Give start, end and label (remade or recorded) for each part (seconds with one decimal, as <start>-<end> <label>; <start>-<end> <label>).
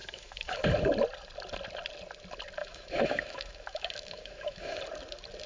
0.0-0.6 remade; 0.6-2.6 recorded; 2.6-4.8 remade; 4.8-5.5 recorded